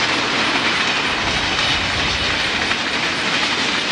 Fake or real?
real